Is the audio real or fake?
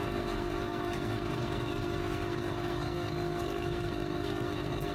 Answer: fake